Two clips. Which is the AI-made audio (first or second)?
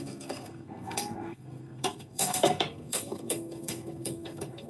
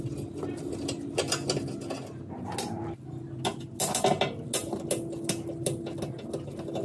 first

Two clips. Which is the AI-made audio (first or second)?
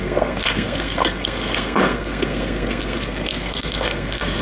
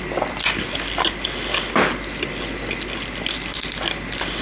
first